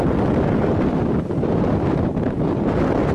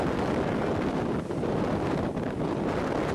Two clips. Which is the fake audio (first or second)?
first